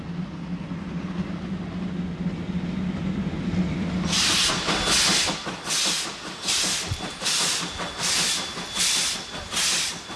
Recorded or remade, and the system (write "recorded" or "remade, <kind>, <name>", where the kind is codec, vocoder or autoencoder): recorded